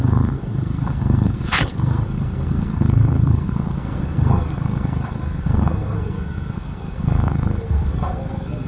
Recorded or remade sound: remade